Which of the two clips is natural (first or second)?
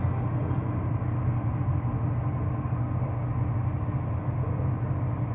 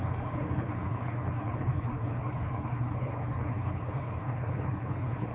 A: first